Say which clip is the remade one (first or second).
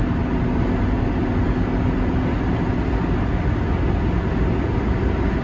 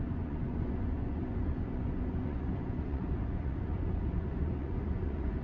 second